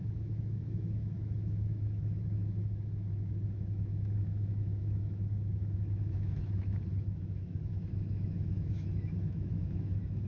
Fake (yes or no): yes